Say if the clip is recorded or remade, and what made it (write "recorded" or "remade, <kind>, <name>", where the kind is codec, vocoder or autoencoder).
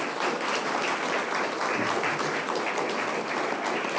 recorded